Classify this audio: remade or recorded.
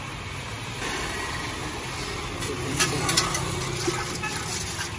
recorded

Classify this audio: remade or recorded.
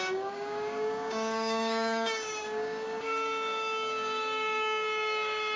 remade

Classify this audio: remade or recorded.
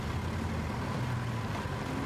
recorded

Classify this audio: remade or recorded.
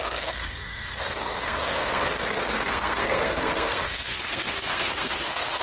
remade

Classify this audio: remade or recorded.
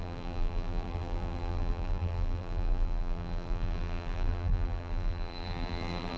remade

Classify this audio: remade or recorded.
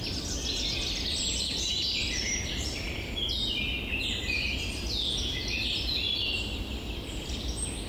recorded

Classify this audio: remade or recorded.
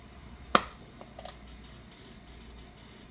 recorded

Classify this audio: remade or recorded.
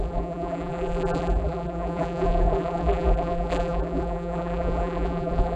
remade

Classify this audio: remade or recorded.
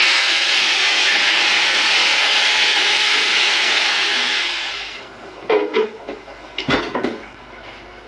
remade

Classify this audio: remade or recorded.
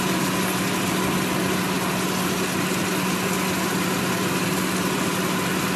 recorded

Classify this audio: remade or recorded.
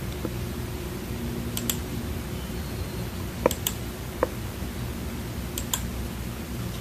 recorded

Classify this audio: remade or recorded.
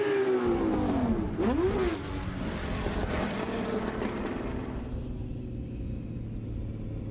recorded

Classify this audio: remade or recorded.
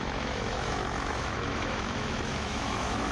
remade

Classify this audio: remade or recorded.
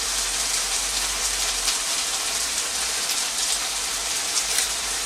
remade